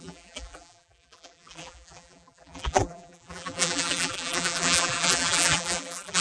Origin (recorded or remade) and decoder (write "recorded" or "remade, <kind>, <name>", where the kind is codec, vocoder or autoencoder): remade, vocoder, BigVGAN v2